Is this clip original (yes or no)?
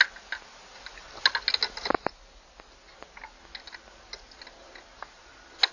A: yes